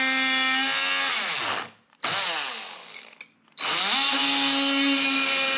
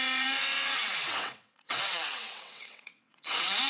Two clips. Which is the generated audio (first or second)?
second